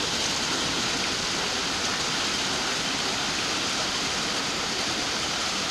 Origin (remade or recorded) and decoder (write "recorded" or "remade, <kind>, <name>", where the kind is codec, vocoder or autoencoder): recorded